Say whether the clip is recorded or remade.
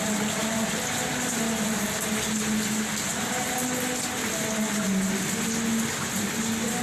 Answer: remade